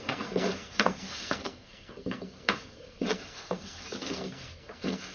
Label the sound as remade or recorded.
remade